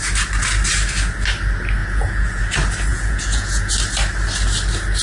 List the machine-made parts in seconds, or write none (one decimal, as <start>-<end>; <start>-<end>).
1.8-2.4; 2.9-3.7